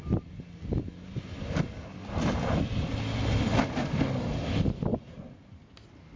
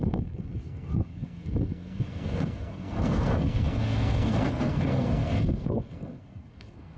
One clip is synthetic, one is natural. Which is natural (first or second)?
first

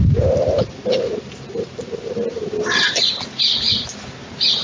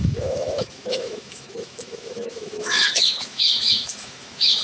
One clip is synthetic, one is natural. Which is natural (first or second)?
first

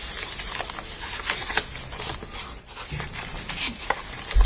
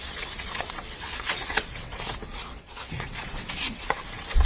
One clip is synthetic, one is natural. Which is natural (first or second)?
first